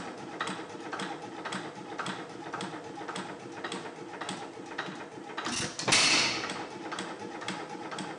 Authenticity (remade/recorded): recorded